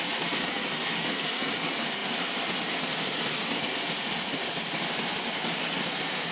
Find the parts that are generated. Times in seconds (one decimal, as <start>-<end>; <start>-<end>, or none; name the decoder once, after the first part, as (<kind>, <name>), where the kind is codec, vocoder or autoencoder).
1.0-1.5 (codec, SNAC)